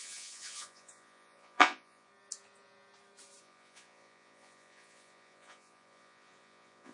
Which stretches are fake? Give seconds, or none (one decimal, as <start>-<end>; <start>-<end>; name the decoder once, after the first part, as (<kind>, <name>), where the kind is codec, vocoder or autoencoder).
0.0-2.1 (vocoder, Vocos); 3.4-6.9